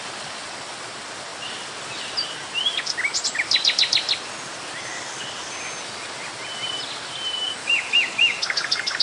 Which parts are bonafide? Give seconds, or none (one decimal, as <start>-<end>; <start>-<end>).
0.0-4.9; 5.5-7.6